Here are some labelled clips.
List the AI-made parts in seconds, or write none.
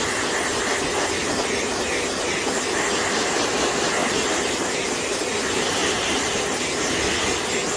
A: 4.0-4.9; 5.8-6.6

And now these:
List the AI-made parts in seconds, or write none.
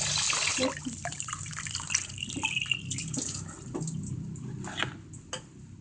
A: 0.5-4.0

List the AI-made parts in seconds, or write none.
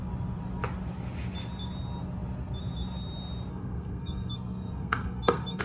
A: 3.5-5.6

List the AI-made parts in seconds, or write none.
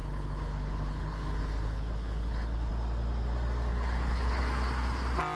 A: 0.0-2.7; 3.7-4.4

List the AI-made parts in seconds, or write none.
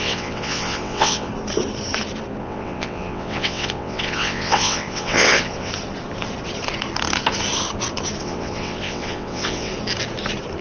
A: 0.0-1.3; 2.4-5.7; 8.2-9.7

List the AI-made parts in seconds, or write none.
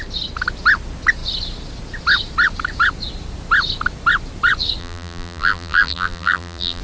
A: 4.8-6.8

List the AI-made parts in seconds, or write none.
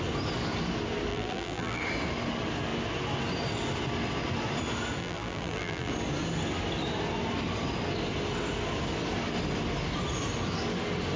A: 1.1-1.8; 5.0-5.9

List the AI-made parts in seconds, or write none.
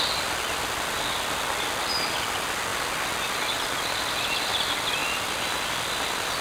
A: none